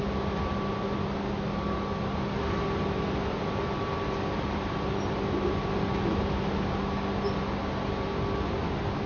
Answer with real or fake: real